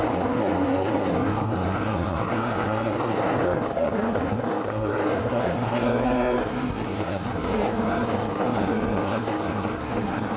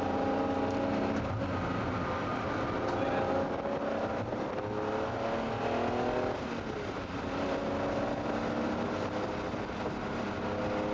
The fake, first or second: first